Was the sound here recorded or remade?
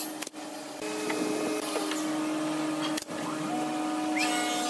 recorded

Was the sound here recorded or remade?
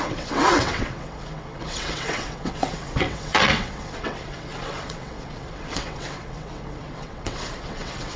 remade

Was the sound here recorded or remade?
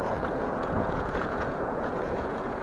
remade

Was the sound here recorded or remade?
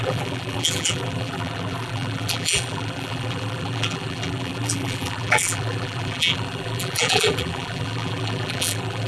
remade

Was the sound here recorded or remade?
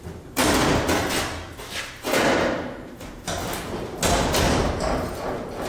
recorded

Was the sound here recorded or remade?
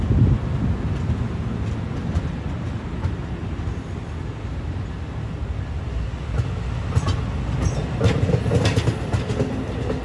recorded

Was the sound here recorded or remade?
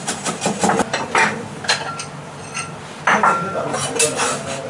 recorded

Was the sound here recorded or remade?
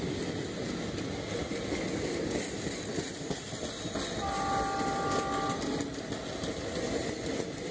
recorded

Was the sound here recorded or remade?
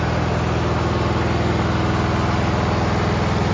recorded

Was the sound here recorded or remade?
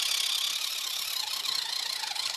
recorded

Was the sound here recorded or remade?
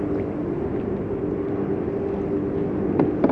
recorded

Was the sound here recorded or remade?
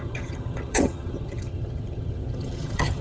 remade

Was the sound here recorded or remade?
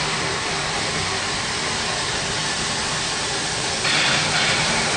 recorded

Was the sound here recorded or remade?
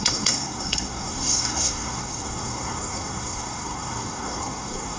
remade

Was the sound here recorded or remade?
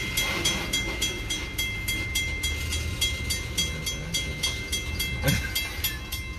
recorded